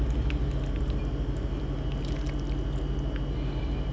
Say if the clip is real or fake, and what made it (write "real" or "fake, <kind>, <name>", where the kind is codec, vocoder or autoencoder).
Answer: real